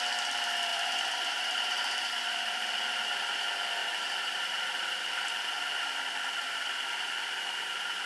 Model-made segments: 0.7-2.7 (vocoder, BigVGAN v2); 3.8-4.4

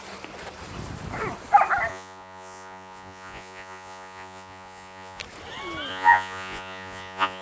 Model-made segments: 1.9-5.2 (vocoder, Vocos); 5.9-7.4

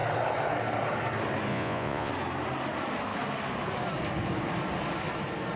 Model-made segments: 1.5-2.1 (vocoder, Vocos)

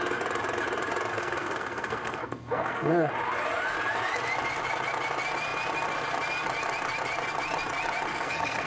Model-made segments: 1.1-3.1 (codec, SNAC); 8.1-8.7

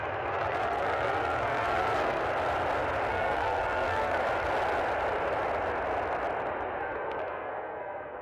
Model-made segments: 0.0-2.2 (codec, SNAC); 3.1-4.2; 6.8-8.2

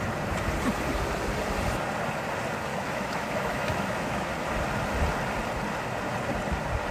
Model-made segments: 2.7-4.3 (autoencoder, DAC-VAE)

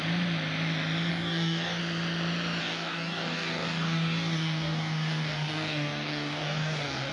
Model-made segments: 1.1-1.8 (codec, DAC); 2.6-7.1

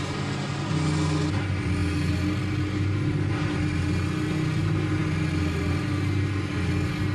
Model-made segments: none